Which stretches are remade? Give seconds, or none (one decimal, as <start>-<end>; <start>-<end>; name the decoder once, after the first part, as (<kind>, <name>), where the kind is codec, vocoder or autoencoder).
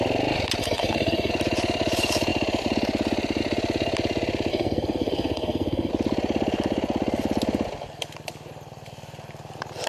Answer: 0.6-1.3 (codec, SNAC); 4.5-5.9